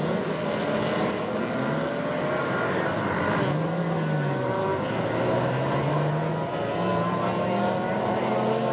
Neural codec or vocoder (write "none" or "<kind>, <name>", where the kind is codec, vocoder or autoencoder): none